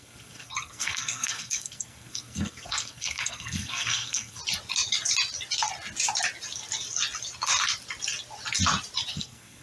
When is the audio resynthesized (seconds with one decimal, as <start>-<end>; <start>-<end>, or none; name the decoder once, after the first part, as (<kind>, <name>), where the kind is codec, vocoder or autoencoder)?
0.0-4.4 (codec, SNAC); 9.1-9.6